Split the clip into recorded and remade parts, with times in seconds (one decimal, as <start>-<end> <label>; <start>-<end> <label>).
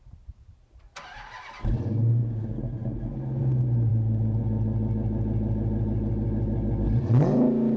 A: 0.0-7.8 recorded